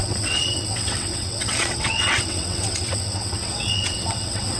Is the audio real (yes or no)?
no